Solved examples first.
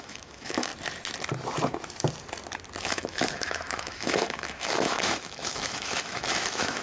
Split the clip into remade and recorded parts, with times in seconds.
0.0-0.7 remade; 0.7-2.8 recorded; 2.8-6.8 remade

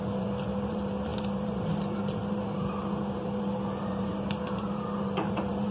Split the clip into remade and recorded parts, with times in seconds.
0.0-5.7 remade

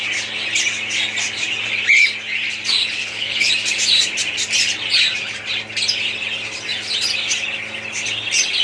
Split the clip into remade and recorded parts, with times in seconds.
0.0-2.8 recorded; 2.8-3.5 remade; 3.5-8.6 recorded